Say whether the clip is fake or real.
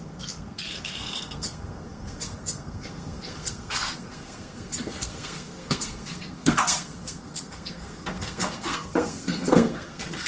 fake